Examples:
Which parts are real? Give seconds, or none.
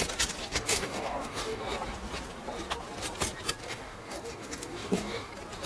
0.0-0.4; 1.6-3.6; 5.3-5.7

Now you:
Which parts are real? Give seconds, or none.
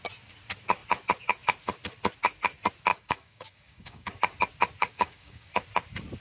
0.0-2.9; 4.1-4.8; 5.5-6.2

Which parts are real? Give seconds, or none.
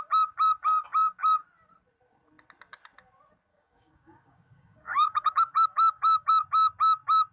0.0-3.5; 6.3-7.3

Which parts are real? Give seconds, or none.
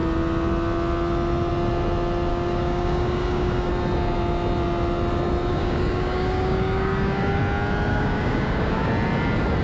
0.0-2.3; 3.7-5.5; 7.4-7.9; 8.9-9.6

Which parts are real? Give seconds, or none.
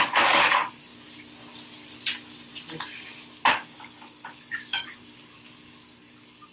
0.9-3.5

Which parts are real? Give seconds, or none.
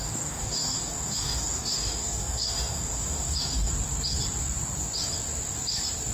3.7-6.1